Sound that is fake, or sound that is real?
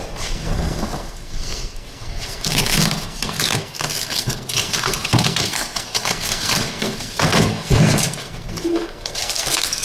fake